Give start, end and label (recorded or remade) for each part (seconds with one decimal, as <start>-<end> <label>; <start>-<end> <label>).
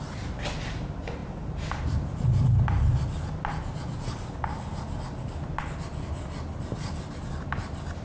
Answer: 0.0-8.0 recorded